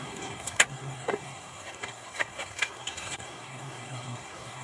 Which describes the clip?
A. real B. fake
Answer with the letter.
B